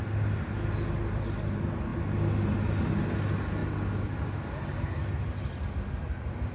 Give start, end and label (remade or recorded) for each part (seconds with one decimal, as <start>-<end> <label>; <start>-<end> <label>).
0.0-6.5 recorded